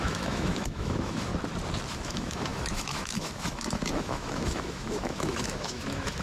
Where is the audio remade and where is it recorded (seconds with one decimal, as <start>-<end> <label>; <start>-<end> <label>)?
0.0-1.3 remade; 1.3-1.9 recorded; 1.9-6.2 remade